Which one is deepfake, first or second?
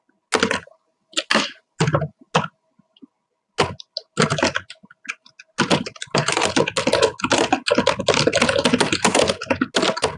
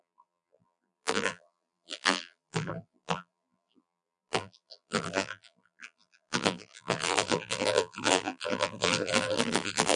second